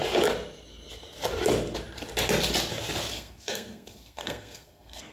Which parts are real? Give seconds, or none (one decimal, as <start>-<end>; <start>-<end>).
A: 0.0-3.1